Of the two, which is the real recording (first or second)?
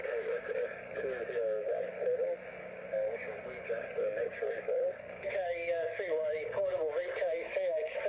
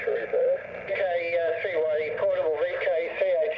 second